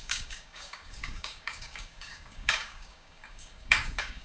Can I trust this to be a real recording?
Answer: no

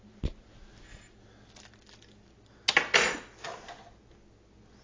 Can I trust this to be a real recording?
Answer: yes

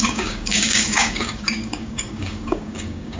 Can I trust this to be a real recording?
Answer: no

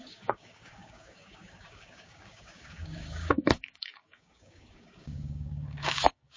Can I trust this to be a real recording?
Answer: no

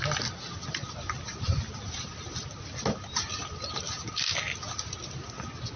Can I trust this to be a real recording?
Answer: yes